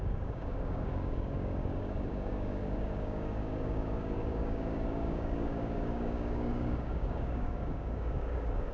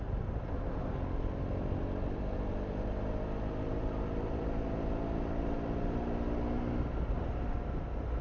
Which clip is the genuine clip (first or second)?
second